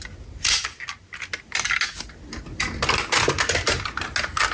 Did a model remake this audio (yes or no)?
no